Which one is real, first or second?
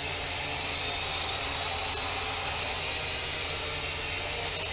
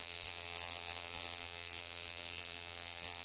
first